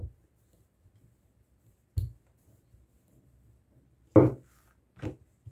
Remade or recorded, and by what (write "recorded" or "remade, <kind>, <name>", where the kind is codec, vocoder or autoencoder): recorded